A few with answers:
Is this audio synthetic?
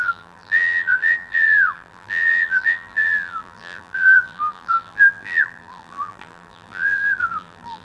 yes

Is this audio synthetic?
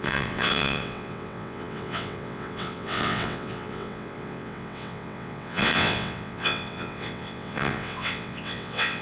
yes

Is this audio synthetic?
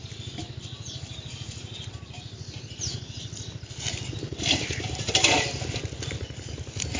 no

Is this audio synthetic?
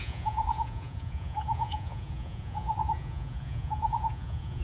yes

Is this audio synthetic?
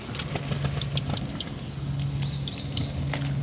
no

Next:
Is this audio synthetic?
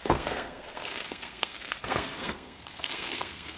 yes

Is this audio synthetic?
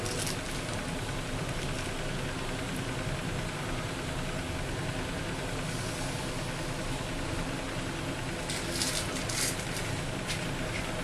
no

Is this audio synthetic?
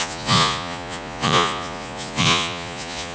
yes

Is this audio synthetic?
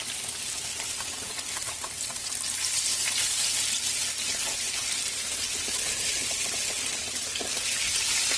no